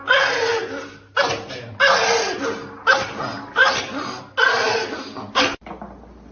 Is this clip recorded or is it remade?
recorded